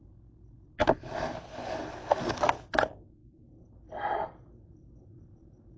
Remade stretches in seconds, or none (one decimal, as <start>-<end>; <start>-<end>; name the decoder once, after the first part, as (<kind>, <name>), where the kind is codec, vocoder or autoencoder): none